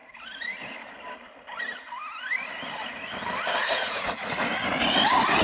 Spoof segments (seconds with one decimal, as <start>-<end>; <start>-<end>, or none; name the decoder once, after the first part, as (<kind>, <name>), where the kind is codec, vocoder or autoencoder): 3.6-4.5 (vocoder, Vocos)